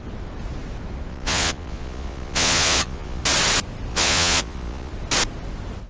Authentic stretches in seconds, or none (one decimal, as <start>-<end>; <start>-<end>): 0.0-1.1; 3.2-3.9; 4.9-5.9